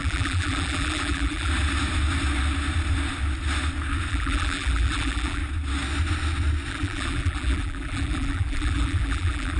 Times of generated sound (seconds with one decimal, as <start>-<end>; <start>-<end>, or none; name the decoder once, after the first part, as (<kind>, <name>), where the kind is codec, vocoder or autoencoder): 0.0-1.5 (vocoder, BigVGAN v2); 4.1-5.4; 6.7-9.6